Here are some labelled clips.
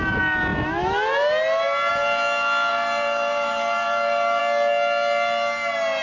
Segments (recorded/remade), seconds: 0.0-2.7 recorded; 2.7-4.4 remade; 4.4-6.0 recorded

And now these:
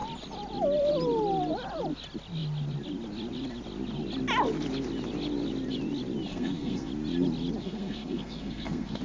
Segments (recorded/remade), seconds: 0.0-6.3 recorded; 6.3-6.9 remade; 6.9-7.6 recorded; 7.6-9.0 remade

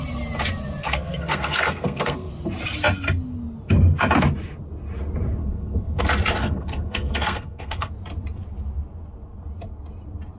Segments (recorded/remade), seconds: 0.0-0.8 recorded; 0.8-2.3 remade; 2.3-5.4 recorded; 5.4-6.0 remade; 6.0-6.4 recorded; 6.4-7.9 remade; 7.9-10.4 recorded

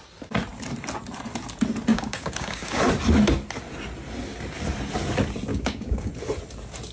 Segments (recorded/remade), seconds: 0.0-1.9 recorded; 1.9-2.8 remade; 2.8-5.5 recorded; 5.5-6.1 remade; 6.1-6.9 recorded

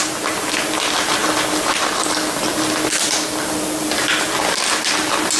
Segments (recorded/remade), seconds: 0.0-1.2 recorded; 1.2-4.4 remade; 4.4-5.4 recorded